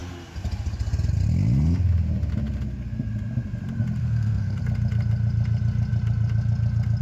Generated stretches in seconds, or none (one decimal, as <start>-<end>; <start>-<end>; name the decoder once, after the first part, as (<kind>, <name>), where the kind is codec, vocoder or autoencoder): 4.0-4.6 (codec, SNAC)